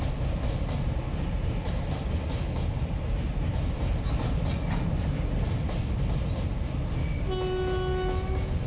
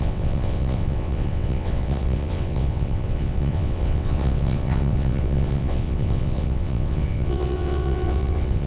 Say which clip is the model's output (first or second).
second